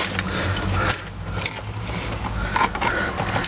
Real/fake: real